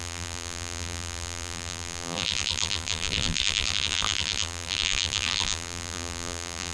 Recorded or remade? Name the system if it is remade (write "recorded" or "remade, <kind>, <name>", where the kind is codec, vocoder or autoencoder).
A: remade, vocoder, BigVGAN v2